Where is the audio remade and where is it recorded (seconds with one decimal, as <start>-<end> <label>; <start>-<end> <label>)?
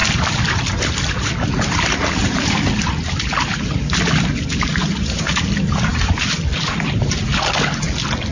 0.0-8.3 recorded